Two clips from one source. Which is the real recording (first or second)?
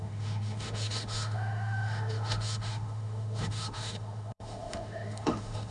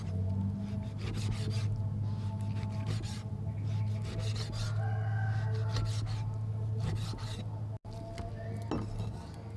second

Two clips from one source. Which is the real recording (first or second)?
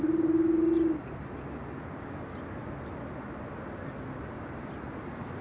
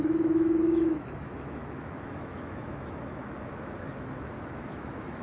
first